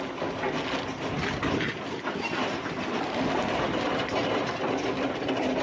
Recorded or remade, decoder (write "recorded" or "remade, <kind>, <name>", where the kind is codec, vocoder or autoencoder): recorded